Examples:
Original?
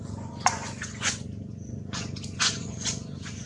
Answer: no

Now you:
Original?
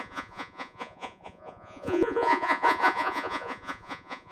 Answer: no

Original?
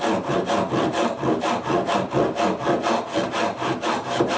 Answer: yes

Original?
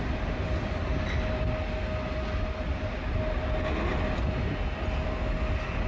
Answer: yes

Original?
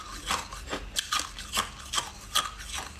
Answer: yes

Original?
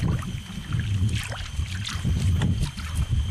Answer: yes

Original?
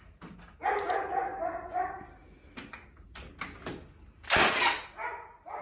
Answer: yes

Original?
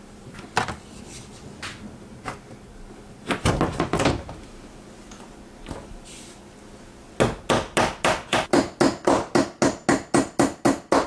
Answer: yes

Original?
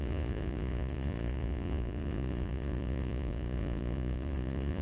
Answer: no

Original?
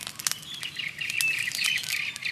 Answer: yes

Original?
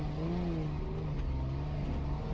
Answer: yes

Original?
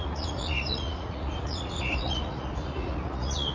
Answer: no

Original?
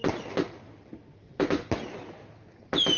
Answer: yes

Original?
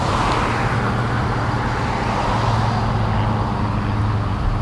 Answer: yes